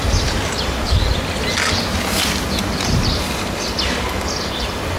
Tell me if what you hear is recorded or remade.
recorded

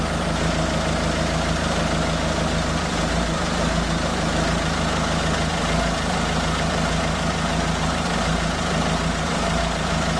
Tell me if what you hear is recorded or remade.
recorded